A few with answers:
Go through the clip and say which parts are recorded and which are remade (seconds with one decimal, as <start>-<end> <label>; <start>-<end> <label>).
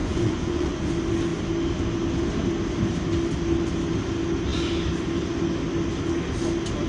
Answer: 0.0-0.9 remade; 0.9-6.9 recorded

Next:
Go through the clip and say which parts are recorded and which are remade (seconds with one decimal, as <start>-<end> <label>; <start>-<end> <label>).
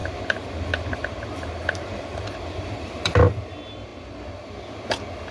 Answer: 0.0-3.2 remade; 3.2-5.3 recorded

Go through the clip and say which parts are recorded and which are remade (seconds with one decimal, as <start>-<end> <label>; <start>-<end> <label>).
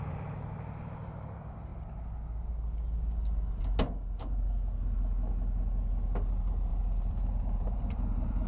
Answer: 0.0-6.7 recorded; 6.7-8.5 remade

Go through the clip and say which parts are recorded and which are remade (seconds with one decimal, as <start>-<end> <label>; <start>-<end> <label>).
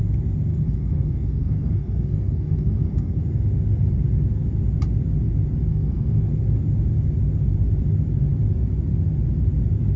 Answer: 0.0-0.5 recorded; 0.5-3.2 remade; 3.2-5.7 recorded; 5.7-6.3 remade; 6.3-10.0 recorded